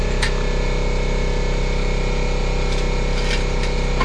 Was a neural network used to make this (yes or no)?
no